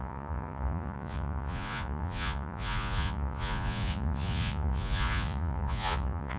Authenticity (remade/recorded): remade